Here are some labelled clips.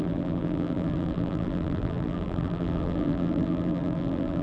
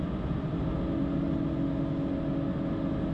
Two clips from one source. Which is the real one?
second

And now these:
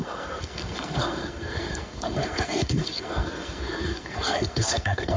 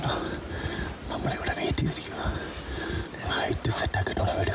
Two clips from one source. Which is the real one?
second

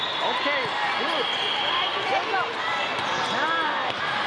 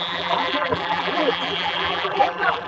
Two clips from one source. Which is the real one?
first